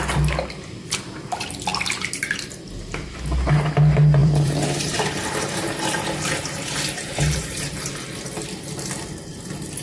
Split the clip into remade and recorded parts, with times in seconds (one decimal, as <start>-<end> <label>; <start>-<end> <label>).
0.0-4.2 recorded; 4.2-7.9 remade; 7.9-9.8 recorded